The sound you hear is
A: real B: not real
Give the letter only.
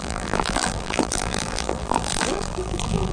B